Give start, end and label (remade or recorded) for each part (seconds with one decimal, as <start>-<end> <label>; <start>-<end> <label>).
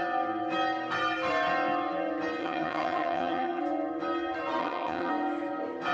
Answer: 0.0-2.4 recorded; 2.4-3.6 remade; 3.6-4.6 recorded; 4.6-5.1 remade; 5.1-5.9 recorded